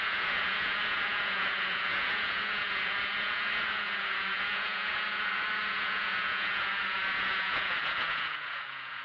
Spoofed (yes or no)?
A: yes